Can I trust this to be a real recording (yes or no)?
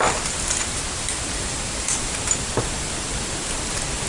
yes